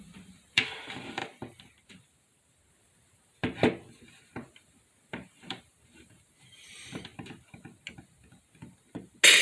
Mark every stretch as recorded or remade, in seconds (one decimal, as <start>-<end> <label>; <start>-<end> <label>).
0.0-3.4 remade; 3.4-4.1 recorded; 4.1-7.1 remade; 7.1-9.4 recorded